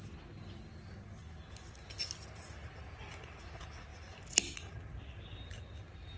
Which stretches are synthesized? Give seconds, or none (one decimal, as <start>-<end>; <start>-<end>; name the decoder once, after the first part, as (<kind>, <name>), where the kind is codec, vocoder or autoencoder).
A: none